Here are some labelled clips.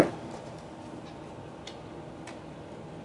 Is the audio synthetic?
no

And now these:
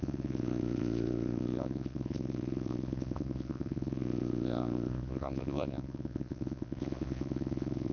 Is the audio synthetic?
yes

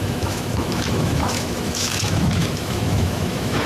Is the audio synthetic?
yes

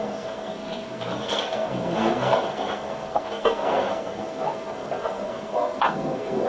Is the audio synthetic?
yes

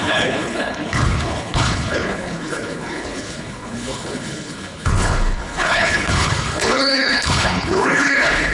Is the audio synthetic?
yes